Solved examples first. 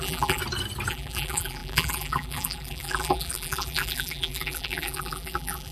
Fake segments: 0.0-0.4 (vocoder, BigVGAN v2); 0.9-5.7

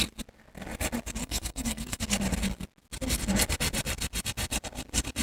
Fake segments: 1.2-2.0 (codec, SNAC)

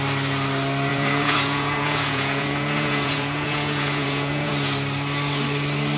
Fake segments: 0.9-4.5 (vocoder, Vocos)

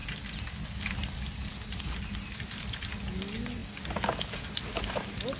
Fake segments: none

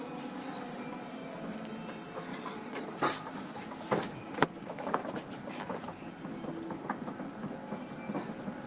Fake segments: 2.3-2.8 (vocoder, Vocos)

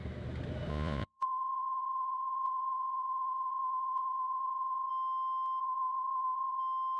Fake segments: 0.7-4.9 (vocoder, Vocos); 5.6-6.6

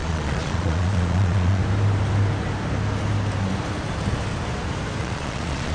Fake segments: 0.0-1.6 (vocoder, Vocos); 5.0-5.7

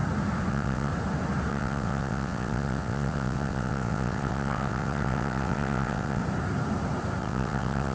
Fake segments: 0.5-0.9 (vocoder, WaveNeXt); 1.5-6.2; 7.2-7.9